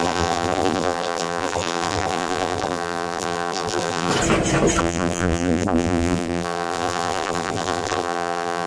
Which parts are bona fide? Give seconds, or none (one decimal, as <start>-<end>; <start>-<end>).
4.1-4.8